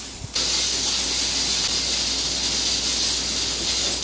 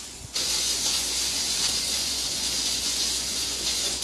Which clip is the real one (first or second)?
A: first